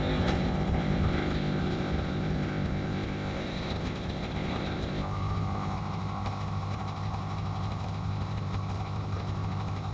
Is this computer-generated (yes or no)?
yes